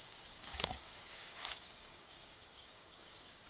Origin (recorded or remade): remade